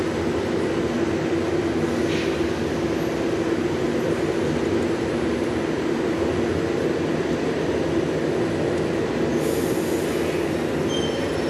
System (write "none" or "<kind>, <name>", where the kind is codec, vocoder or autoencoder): none